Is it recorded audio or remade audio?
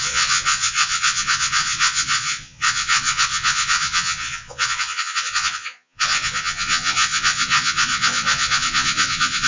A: remade